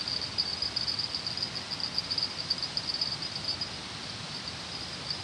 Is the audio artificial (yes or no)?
no